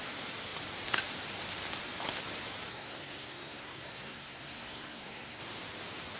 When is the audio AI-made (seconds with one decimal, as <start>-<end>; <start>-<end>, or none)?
2.7-5.4